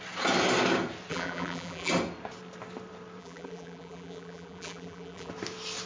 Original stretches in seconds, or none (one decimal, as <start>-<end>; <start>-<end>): 0.0-1.1; 1.9-3.2; 5.3-5.9